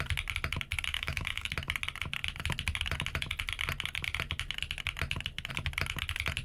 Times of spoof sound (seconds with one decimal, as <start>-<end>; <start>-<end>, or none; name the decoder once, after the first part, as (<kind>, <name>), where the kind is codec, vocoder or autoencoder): 0.9-1.5 (autoencoder, DAC-VAE)